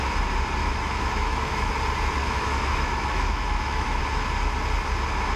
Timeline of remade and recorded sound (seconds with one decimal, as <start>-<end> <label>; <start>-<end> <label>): 0.0-0.6 recorded; 0.6-1.7 remade; 1.7-2.2 recorded; 2.2-4.0 remade; 4.0-5.4 recorded

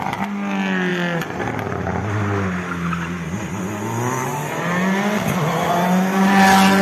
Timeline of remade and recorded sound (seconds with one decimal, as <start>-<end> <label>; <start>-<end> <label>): 0.0-6.8 recorded

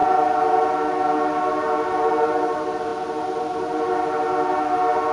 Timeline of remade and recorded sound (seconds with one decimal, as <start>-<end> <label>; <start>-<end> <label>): 0.0-5.1 recorded